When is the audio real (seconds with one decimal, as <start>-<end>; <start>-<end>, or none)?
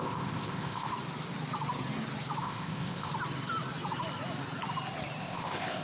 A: 0.9-2.4; 3.1-5.2